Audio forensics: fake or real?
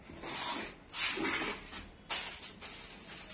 real